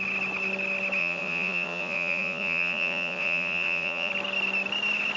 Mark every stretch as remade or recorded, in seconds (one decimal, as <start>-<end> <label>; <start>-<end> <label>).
0.0-1.0 recorded; 1.0-4.1 remade; 4.1-5.2 recorded